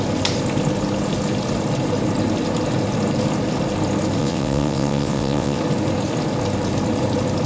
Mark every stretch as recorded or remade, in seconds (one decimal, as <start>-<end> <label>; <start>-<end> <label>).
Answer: 0.0-4.2 recorded; 4.2-5.6 remade; 5.6-7.5 recorded